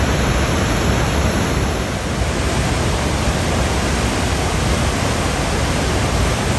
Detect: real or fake real